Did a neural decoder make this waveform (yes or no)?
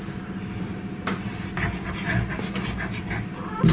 no